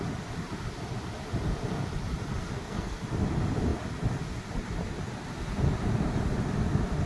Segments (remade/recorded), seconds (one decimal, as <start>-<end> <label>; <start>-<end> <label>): 0.0-2.4 recorded; 2.4-3.0 remade; 3.0-7.1 recorded